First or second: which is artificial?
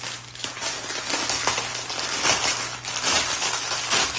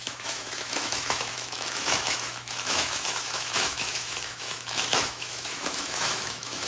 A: second